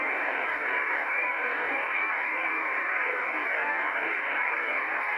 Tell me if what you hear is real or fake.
fake